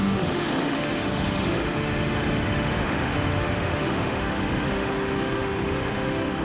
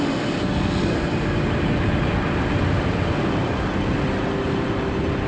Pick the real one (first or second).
second